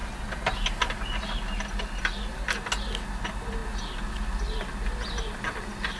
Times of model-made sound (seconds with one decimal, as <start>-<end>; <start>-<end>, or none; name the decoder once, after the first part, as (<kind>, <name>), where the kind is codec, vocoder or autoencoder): none